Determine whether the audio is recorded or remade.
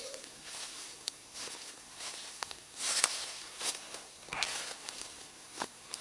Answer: remade